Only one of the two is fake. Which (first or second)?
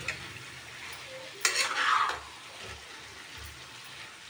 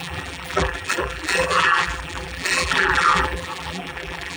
second